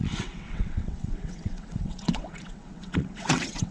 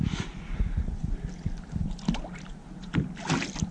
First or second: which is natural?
second